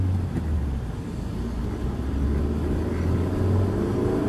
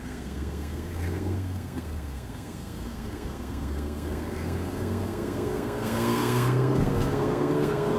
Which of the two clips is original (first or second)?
first